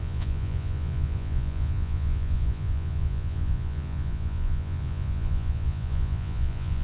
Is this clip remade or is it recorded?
remade